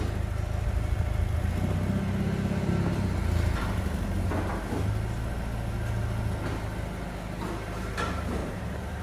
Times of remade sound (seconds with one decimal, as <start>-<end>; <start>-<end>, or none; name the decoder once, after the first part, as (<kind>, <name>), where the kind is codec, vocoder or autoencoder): 8.4-9.0 (vocoder, BigVGAN v2)